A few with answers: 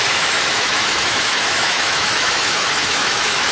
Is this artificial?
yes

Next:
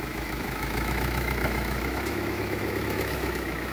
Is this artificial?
yes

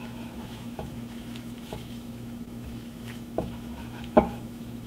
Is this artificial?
yes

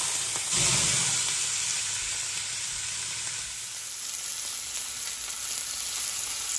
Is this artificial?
no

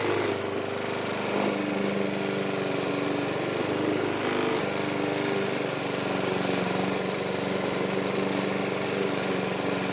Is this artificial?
no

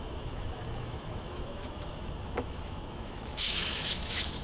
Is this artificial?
yes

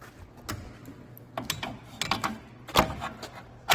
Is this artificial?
no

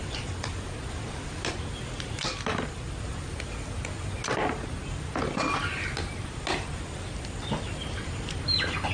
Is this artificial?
no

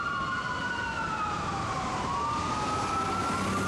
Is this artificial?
no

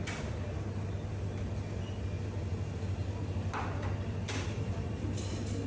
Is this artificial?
no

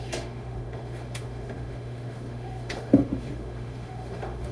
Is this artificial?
yes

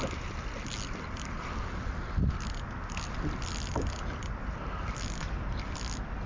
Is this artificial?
no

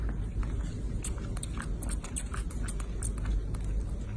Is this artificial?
no